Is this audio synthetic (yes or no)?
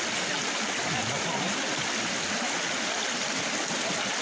no